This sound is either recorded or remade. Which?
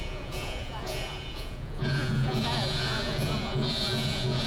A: remade